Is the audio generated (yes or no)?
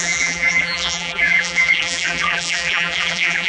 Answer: yes